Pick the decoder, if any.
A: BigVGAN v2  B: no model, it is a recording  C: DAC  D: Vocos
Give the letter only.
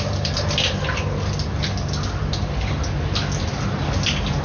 B